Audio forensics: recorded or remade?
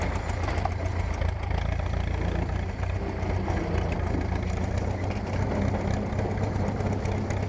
recorded